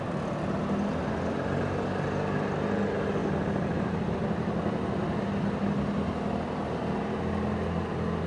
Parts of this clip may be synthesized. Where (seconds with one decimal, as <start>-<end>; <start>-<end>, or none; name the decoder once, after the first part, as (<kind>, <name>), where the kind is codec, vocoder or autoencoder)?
none